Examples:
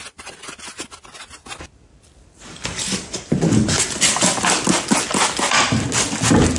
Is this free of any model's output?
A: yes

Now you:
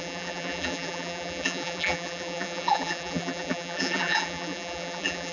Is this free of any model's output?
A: no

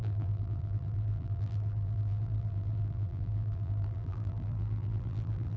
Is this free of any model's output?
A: no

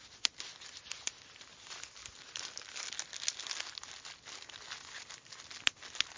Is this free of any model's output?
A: yes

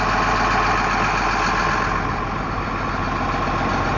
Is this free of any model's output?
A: yes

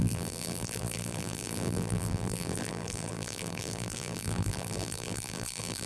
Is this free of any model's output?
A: no